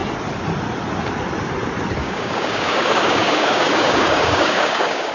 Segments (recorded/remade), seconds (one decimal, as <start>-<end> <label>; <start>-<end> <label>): 0.0-2.0 recorded; 2.0-5.1 remade

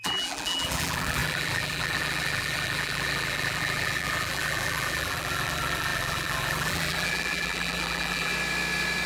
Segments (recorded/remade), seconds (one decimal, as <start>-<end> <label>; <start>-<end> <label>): 0.0-8.3 remade; 8.3-9.1 recorded

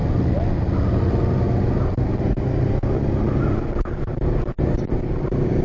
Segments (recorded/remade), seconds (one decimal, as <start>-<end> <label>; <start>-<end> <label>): 0.0-5.6 recorded